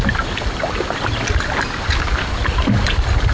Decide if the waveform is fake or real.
real